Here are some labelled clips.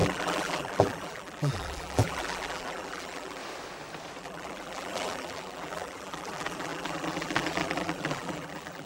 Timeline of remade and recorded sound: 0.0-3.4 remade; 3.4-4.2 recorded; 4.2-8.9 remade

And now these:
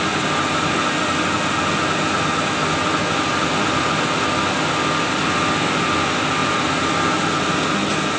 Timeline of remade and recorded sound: 0.0-6.4 recorded; 6.4-7.3 remade; 7.3-8.2 recorded

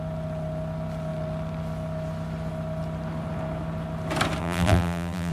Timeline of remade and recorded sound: 0.0-4.4 recorded; 4.4-5.3 remade

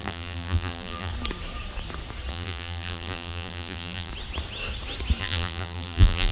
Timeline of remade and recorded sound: 0.0-1.1 remade; 1.1-2.3 recorded; 2.3-4.1 remade; 4.1-5.2 recorded; 5.2-6.3 remade

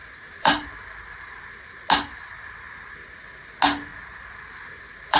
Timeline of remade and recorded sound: 0.0-1.4 remade; 1.4-3.9 recorded; 3.9-5.2 remade

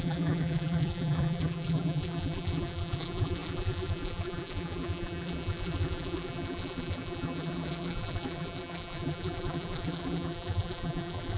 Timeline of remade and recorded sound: 0.0-11.4 remade

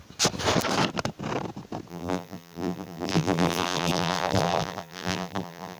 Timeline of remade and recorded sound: 0.0-1.9 recorded; 1.9-5.8 remade